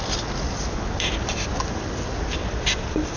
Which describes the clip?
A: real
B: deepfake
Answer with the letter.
A